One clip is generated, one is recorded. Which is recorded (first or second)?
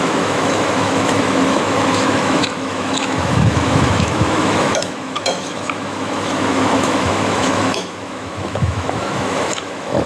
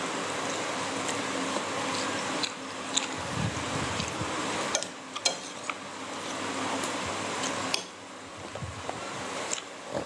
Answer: second